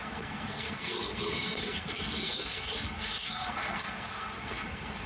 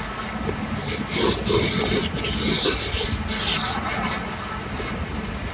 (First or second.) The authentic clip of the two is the second